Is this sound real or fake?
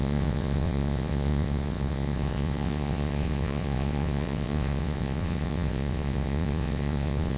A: fake